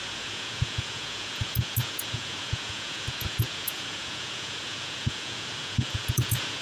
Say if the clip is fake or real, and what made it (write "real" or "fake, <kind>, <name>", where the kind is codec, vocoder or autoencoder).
fake, vocoder, Vocos